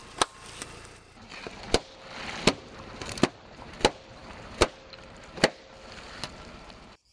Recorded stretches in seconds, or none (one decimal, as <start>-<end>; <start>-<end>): 0.0-7.1